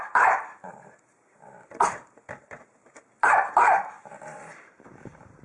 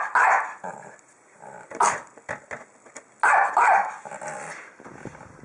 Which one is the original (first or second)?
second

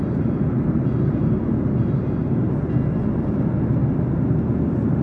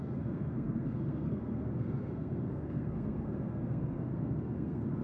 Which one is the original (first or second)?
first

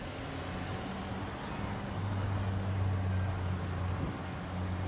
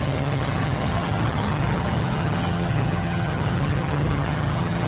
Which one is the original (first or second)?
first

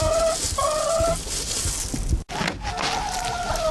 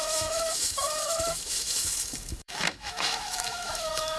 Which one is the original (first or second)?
first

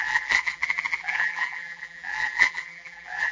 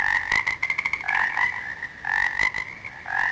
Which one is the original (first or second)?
second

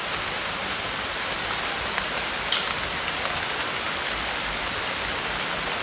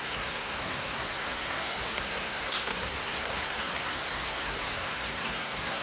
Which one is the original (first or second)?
first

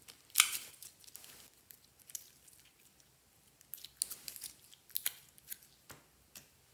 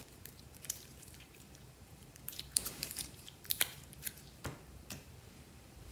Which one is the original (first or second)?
first